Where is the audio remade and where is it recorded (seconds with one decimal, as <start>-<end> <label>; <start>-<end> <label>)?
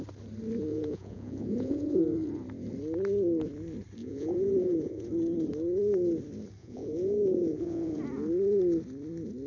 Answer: 0.0-0.7 recorded; 0.7-2.0 remade; 2.0-4.0 recorded; 4.0-5.0 remade; 5.0-6.6 recorded; 6.6-8.0 remade; 8.0-9.5 recorded